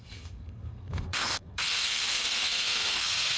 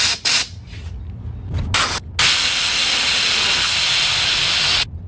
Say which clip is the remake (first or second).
first